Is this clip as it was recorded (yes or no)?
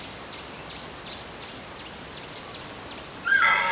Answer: yes